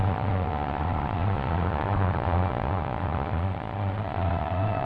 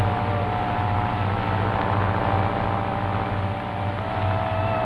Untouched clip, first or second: second